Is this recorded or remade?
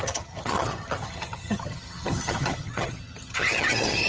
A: remade